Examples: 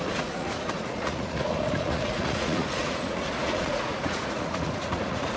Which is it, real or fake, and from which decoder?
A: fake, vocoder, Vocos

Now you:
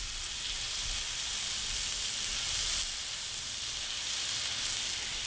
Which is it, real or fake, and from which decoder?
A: real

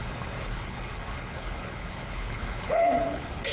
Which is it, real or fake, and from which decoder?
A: fake, codec, HILCodec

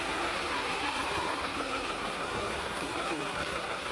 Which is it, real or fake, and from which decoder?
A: fake, codec, SNAC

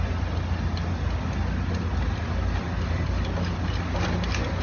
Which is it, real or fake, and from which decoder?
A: real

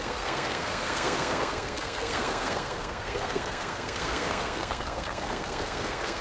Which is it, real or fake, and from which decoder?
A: fake, codec, SNAC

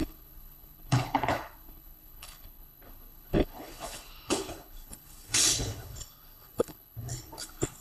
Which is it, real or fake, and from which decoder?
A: fake, codec, HILCodec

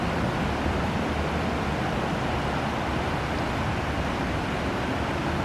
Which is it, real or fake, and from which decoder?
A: real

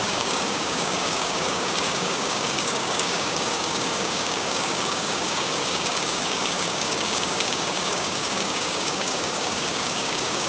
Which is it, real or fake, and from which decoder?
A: fake, codec, DAC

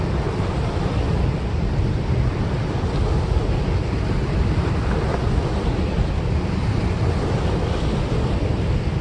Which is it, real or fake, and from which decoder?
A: real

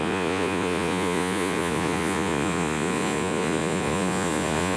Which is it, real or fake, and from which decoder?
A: fake, vocoder, Vocos